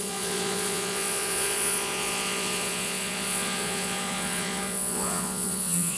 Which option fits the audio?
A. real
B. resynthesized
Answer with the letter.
B